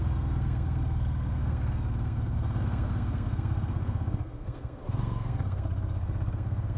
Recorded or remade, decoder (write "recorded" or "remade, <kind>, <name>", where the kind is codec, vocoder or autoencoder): remade, codec, SNAC